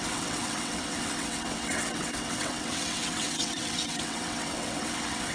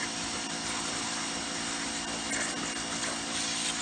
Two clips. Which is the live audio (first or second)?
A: second